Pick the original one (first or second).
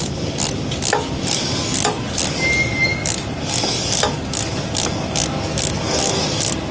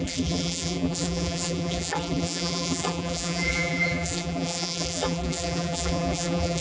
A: first